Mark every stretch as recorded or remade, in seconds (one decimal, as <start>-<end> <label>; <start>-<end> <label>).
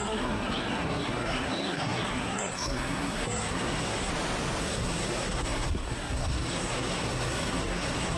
0.0-4.1 remade; 4.1-4.6 recorded; 4.6-8.2 remade